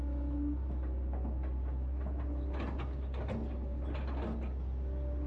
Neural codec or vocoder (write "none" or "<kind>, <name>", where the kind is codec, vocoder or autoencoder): none